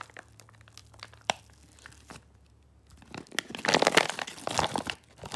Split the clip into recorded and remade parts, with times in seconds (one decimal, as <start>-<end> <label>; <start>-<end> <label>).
0.0-0.8 recorded; 0.8-1.4 remade; 1.4-5.4 recorded